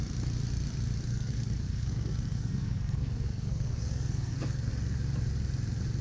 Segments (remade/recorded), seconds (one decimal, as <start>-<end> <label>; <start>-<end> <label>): 0.0-1.1 recorded; 1.1-4.7 remade; 4.7-6.0 recorded